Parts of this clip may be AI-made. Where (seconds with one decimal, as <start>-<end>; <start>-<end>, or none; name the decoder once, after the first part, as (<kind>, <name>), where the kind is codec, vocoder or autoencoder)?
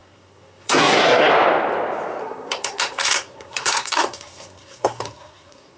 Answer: 0.0-1.3 (codec, SNAC); 2.2-5.8